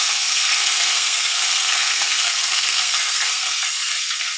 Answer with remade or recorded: remade